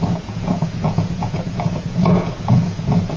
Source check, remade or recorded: remade